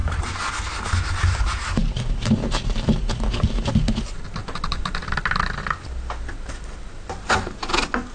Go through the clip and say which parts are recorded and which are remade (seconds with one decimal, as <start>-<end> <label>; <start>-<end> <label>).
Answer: 0.0-0.5 remade; 0.5-1.8 recorded; 1.8-3.6 remade; 3.6-8.1 recorded